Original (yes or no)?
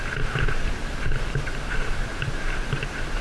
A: yes